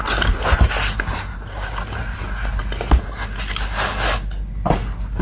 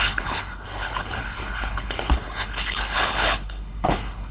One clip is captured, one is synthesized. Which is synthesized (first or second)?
second